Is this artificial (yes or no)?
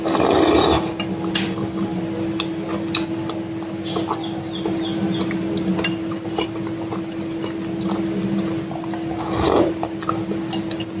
no